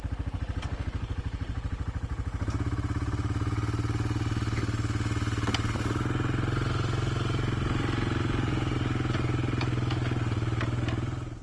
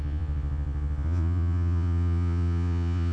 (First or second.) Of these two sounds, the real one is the first